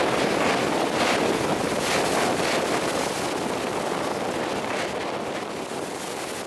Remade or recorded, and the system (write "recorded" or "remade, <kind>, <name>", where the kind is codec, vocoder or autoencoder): recorded